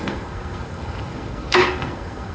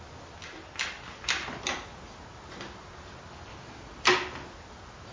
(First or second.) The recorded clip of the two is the second